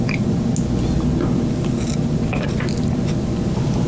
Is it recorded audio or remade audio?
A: recorded